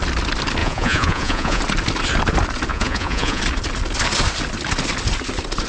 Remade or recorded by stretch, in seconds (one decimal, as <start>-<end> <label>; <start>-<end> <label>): 0.0-0.6 recorded; 0.6-1.6 remade; 1.6-2.7 recorded; 2.7-3.4 remade; 3.4-5.7 recorded